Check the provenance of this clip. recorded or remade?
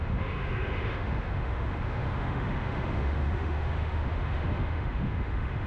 remade